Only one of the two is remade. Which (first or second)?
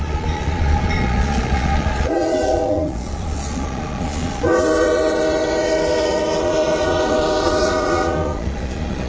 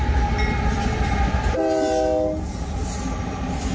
first